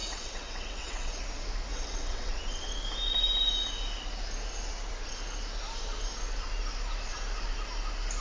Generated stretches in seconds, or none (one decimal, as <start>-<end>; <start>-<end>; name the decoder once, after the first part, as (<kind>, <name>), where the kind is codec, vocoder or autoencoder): 0.0-1.2 (vocoder, WaveNeXt); 1.7-2.3